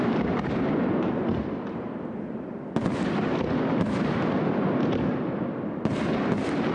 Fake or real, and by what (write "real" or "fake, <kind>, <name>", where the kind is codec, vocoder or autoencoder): real